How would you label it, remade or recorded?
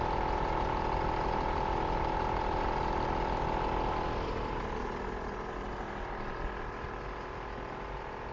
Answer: recorded